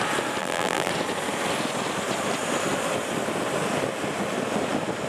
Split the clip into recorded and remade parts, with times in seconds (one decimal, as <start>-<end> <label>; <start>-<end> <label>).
0.0-0.4 recorded; 0.4-0.9 remade; 0.9-5.1 recorded